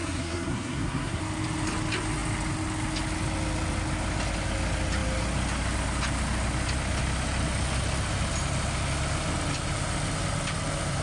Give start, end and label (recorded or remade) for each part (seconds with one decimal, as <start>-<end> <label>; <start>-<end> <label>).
0.0-1.2 remade; 1.2-11.0 recorded

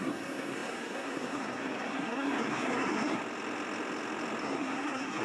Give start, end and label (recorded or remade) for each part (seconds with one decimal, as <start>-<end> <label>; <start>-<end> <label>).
0.0-3.2 remade; 3.2-4.4 recorded; 4.4-5.2 remade

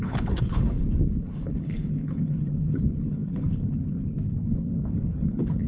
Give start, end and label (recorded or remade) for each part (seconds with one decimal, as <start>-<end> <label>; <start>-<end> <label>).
0.0-5.7 remade

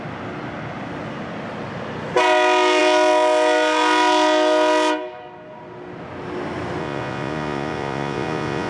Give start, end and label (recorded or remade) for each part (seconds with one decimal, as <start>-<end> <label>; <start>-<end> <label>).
0.0-6.8 recorded; 6.8-8.7 remade

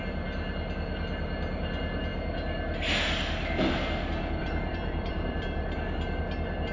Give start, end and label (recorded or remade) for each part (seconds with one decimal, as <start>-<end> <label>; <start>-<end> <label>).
0.0-4.4 recorded; 4.4-6.2 remade; 6.2-6.7 recorded

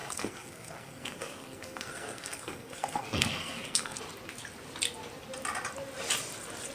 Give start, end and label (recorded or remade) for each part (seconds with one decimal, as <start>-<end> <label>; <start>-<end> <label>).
0.0-4.0 remade; 4.0-6.7 recorded

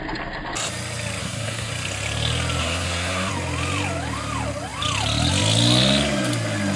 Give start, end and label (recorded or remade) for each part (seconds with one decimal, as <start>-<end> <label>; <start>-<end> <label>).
0.0-1.2 recorded; 1.2-1.7 remade; 1.7-2.6 recorded; 2.6-3.3 remade; 3.3-6.8 recorded